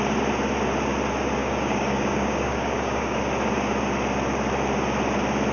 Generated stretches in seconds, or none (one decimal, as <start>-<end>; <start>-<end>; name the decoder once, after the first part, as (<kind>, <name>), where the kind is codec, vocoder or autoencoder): 1.4-3.2 (codec, DAC)